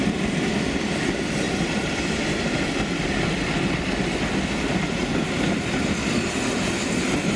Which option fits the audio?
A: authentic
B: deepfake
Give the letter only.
A